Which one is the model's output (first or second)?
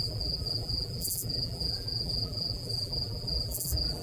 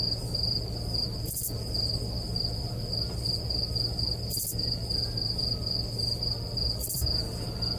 first